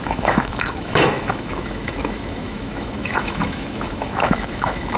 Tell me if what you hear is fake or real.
fake